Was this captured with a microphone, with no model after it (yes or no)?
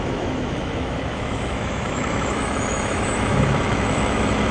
no